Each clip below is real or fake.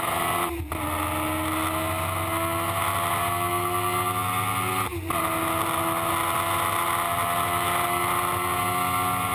real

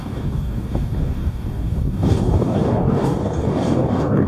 fake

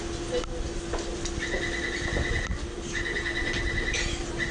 real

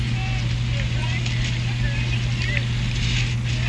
real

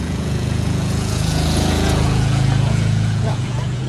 fake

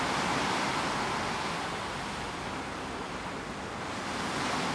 real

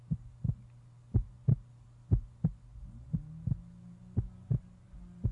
real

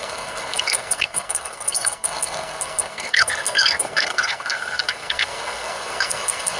fake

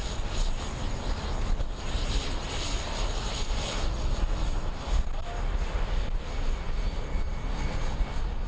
real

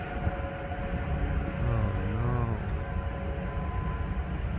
real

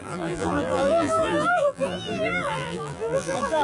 fake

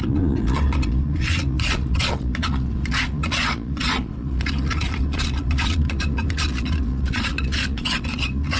fake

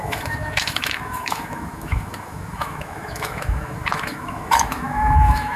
fake